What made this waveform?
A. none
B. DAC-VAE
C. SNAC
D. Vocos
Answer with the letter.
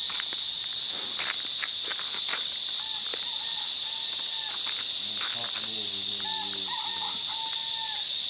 A